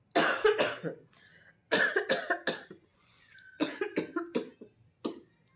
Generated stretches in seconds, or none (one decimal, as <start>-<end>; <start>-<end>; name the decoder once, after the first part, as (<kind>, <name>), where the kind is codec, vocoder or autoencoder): 2.9-3.8 (vocoder, Vocos)